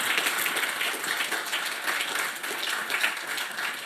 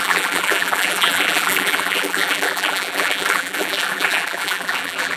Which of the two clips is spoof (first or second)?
second